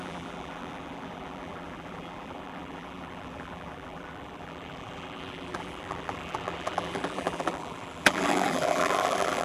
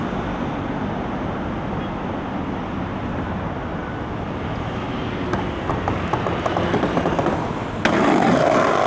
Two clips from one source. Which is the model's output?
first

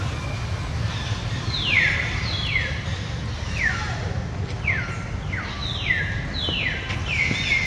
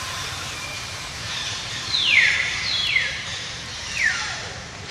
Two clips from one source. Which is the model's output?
second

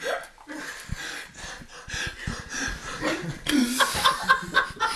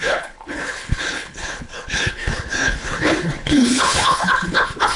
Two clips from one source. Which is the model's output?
second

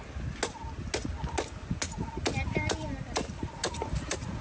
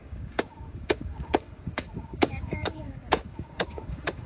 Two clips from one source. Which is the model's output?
second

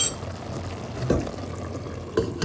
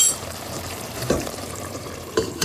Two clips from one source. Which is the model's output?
second